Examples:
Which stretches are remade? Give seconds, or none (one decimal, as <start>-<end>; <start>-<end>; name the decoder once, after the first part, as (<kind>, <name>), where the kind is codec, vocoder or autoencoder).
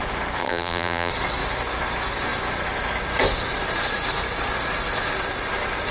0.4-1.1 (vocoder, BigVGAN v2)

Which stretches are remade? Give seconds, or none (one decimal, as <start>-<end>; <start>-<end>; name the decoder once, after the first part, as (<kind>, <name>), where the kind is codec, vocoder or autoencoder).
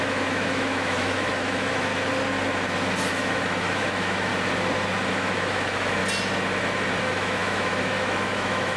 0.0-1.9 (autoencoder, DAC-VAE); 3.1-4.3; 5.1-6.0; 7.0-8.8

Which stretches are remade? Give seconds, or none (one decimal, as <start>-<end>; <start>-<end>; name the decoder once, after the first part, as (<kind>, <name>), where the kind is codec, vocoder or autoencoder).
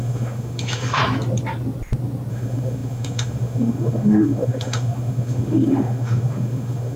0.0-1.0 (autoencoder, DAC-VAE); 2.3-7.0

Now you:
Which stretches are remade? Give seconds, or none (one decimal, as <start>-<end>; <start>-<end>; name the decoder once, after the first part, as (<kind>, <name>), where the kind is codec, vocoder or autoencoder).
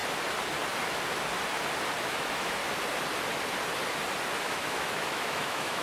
2.0-2.6 (autoencoder, DAC-VAE); 4.4-5.8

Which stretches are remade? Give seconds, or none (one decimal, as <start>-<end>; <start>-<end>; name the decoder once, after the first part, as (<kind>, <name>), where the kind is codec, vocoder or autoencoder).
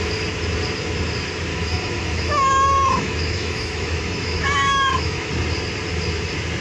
1.5-5.3 (autoencoder, DAC-VAE)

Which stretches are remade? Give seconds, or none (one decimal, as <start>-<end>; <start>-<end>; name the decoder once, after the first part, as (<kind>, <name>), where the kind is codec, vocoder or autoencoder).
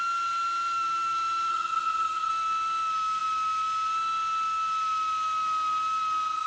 1.5-2.3 (vocoder, HiFi-GAN)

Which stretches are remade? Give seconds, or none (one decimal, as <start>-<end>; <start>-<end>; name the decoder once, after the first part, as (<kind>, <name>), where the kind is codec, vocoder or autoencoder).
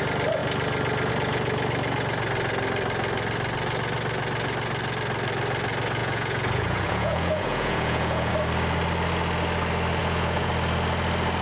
6.0-8.3 (vocoder, Vocos); 10.0-10.5